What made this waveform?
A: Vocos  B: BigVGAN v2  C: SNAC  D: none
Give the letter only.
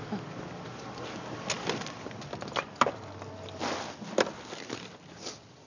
D